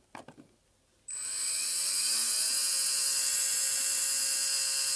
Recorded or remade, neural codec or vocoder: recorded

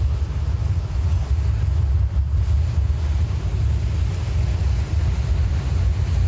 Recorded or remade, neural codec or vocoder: recorded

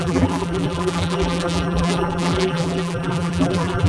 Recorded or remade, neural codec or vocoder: remade, vocoder, BigVGAN v2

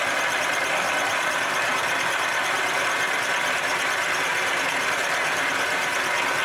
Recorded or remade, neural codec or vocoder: remade, vocoder, BigVGAN v2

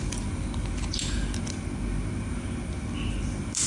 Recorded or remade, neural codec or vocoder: recorded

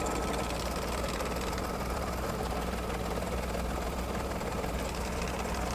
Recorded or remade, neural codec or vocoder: recorded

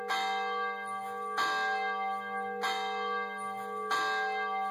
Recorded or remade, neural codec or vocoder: recorded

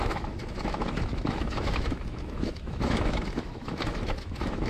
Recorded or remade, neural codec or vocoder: remade, autoencoder, DAC-VAE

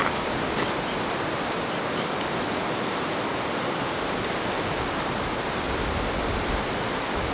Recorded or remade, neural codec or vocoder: recorded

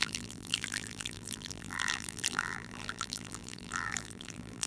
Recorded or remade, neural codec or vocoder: remade, vocoder, BigVGAN v2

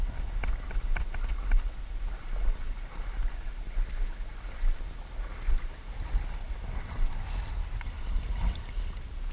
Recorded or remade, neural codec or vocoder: recorded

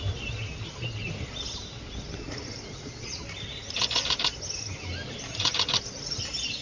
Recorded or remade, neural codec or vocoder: recorded